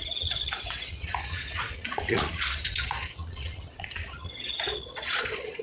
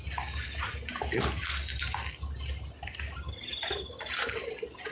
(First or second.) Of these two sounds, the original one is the second